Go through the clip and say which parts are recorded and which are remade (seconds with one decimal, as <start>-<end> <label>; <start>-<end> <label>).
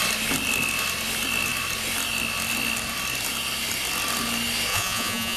0.0-4.7 recorded; 4.7-5.4 remade